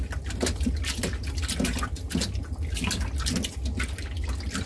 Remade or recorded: recorded